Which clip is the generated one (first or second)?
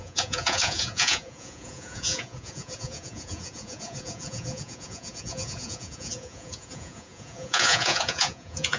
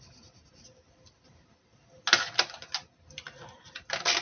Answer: first